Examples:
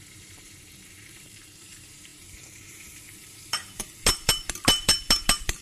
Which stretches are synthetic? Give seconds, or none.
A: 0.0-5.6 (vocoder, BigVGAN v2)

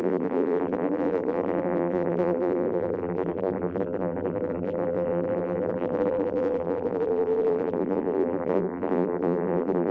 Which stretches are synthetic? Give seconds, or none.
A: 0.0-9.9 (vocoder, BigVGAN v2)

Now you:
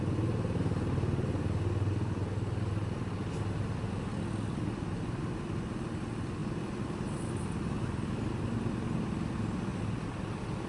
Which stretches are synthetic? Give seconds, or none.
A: none

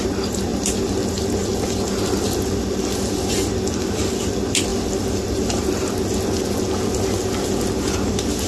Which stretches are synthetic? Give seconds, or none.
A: none

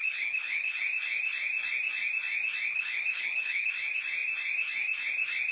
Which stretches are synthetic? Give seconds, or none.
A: 0.0-0.8 (codec, HILCodec); 2.7-3.7

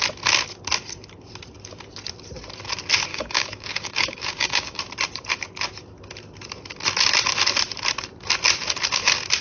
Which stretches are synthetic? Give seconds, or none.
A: 3.1-4.8 (codec, DAC)

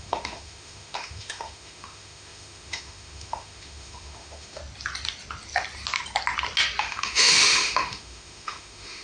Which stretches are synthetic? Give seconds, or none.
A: 0.0-4.6 (autoencoder, DAC-VAE); 6.8-9.0